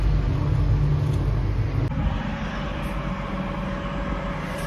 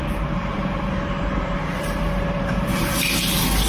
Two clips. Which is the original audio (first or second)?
first